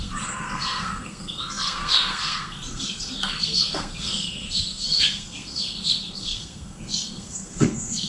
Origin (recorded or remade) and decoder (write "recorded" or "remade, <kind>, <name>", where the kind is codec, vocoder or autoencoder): remade, codec, SNAC